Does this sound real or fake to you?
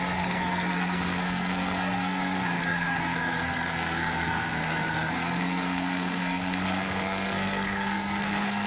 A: fake